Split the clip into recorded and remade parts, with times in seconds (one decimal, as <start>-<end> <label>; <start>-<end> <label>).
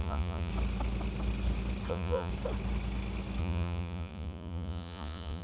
0.0-0.5 remade; 0.5-1.9 recorded; 1.9-2.3 remade; 2.3-3.4 recorded; 3.4-5.4 remade